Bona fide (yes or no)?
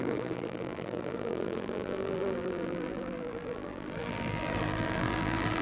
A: no